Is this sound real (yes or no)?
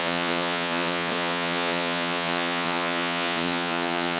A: no